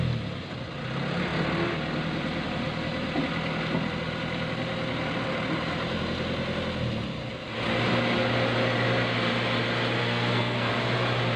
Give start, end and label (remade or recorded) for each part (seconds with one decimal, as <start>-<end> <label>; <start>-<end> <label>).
0.0-10.0 recorded; 10.0-10.7 remade; 10.7-11.4 recorded